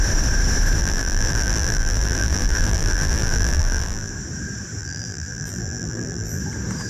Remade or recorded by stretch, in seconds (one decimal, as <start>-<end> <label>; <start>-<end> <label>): 0.0-0.8 recorded; 0.8-4.1 remade; 4.1-4.8 recorded; 4.8-6.4 remade; 6.4-6.9 recorded